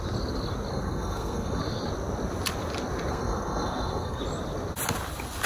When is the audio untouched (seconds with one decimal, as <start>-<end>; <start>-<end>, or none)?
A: 0.0-0.7; 1.6-3.1; 4.2-5.5